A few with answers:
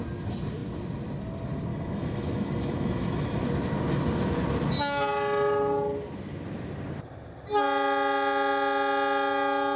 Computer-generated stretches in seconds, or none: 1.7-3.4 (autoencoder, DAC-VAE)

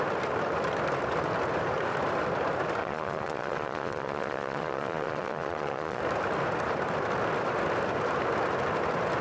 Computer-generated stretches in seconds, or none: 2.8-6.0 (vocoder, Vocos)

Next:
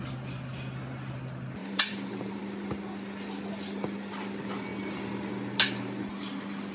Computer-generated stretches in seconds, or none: 1.6-2.4 (vocoder, BigVGAN v2)

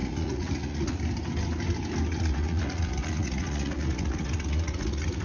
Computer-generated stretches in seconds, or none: 0.0-1.0 (vocoder, Vocos); 2.1-5.2

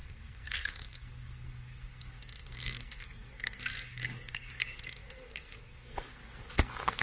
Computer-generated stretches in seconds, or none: 0.0-7.0 (codec, SNAC)

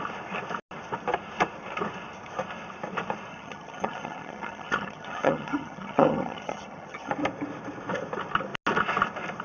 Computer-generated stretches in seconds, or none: 3.3-7.1 (vocoder, HiFi-GAN)